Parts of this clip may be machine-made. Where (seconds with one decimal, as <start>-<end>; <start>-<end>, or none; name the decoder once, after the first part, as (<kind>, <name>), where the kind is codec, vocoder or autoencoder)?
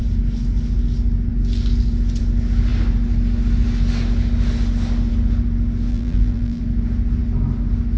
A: 5.9-6.6 (vocoder, BigVGAN v2)